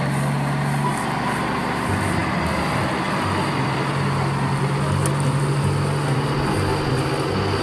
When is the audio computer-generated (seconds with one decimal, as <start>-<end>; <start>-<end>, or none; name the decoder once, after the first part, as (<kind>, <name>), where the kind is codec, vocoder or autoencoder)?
none